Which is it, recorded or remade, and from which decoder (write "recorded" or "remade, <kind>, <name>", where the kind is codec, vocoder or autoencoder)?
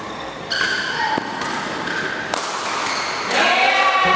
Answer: recorded